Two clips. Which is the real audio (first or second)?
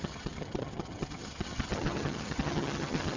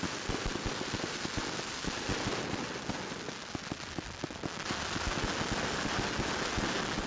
second